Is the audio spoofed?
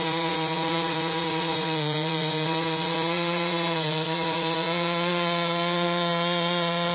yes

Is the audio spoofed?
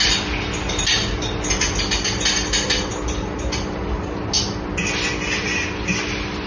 no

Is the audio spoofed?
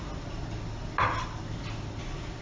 no